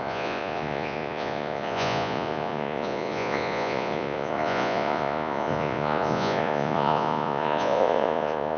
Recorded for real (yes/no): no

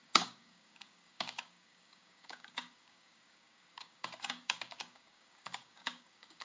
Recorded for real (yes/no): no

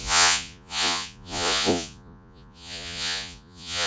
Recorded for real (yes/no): no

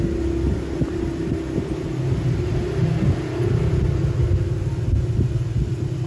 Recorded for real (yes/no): yes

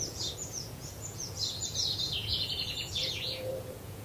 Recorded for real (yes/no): no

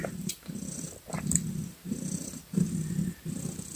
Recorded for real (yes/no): no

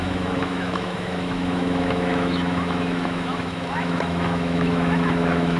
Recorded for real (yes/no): no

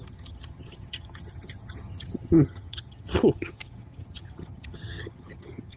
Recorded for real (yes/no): no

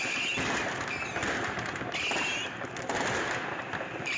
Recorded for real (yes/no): yes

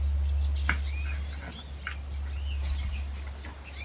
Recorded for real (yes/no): yes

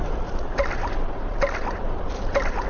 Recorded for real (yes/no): yes